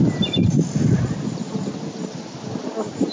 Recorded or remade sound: recorded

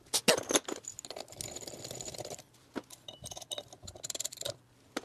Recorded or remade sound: recorded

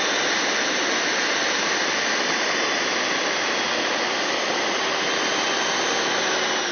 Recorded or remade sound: recorded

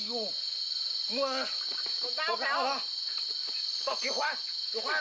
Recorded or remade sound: recorded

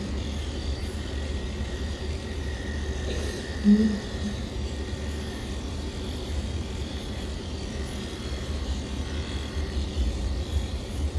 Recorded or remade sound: remade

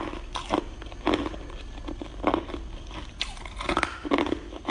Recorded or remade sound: recorded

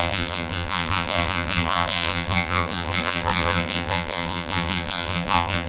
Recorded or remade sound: remade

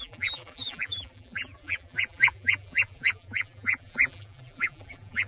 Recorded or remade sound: remade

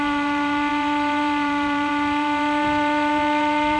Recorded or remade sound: remade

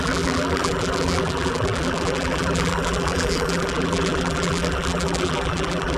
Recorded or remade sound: remade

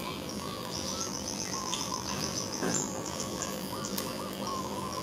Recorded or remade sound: remade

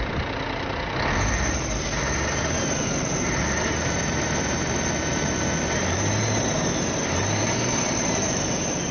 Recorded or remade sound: remade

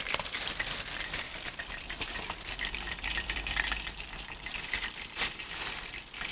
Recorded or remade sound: remade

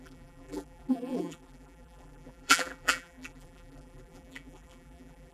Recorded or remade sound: remade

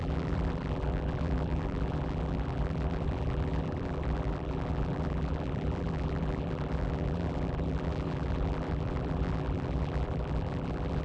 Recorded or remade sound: remade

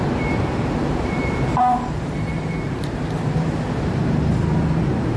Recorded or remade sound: remade